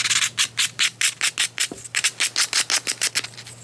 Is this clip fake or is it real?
real